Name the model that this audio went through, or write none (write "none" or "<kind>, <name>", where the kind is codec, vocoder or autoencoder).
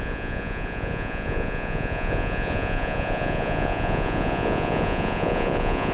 vocoder, Vocos